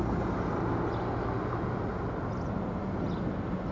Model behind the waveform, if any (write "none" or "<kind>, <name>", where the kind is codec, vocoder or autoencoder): none